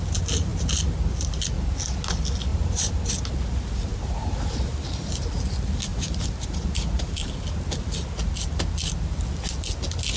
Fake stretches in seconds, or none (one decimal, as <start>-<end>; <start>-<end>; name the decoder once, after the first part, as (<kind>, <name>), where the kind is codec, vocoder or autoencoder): 2.5-3.1 (vocoder, BigVGAN v2); 3.9-5.1; 5.9-7.3